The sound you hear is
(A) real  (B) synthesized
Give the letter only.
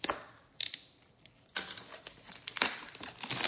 A